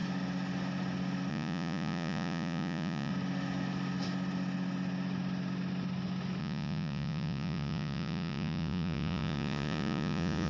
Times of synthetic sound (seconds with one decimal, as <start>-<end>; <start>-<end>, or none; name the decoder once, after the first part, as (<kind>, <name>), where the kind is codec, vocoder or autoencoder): 1.3-3.1 (vocoder, Vocos); 6.4-10.5